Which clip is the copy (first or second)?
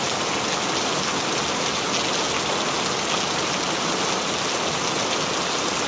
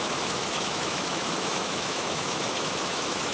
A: second